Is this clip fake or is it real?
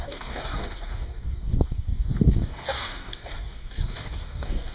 fake